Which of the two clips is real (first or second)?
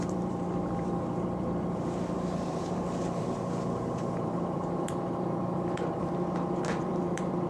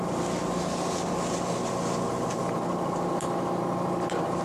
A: second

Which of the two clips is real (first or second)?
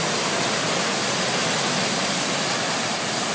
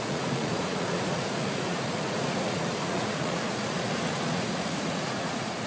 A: first